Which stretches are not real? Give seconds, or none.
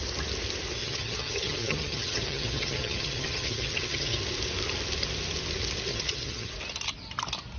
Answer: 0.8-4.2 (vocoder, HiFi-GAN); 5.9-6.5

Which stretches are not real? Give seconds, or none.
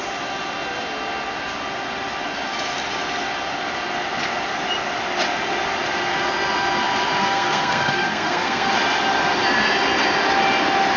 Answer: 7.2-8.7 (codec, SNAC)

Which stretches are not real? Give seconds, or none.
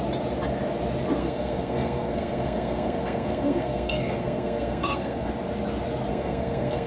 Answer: 1.2-5.3 (codec, SNAC); 6.1-6.9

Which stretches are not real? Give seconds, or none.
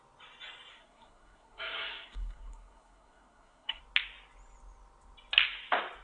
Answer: 0.7-3.8 (codec, SNAC)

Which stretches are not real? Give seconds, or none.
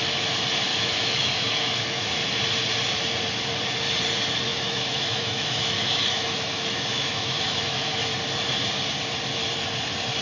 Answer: 0.7-2.1 (autoencoder, DAC-VAE); 4.5-8.0